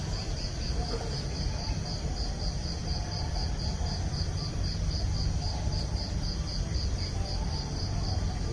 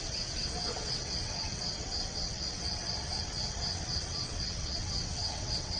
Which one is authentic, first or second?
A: first